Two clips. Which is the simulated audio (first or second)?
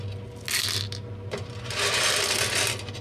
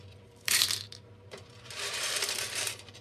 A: second